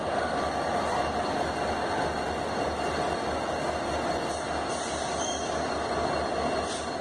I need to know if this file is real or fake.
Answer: real